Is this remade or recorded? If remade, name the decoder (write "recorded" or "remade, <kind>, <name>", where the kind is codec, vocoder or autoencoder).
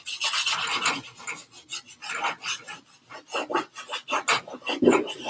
recorded